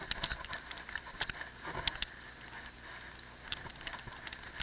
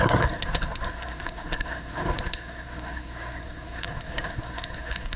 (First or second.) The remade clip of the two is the second